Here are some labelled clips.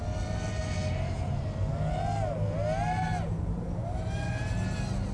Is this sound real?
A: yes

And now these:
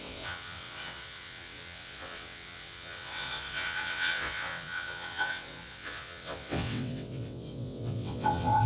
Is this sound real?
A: no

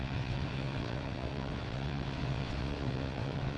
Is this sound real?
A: no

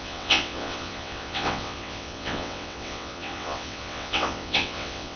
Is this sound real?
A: no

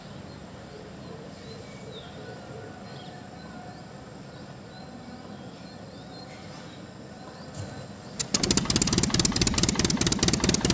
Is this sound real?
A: yes